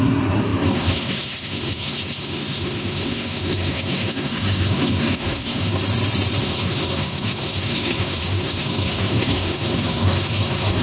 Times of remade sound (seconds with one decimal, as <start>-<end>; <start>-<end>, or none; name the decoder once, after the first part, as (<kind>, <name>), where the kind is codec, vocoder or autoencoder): 0.0-5.8 (codec, SNAC); 6.4-10.8